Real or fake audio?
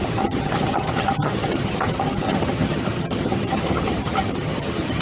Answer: fake